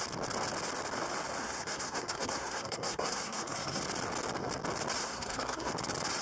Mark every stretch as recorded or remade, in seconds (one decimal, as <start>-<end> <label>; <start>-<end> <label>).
0.0-1.4 recorded; 1.4-3.8 remade; 3.8-5.0 recorded; 5.0-5.7 remade; 5.7-6.2 recorded